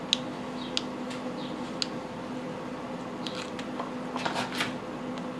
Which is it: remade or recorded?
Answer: recorded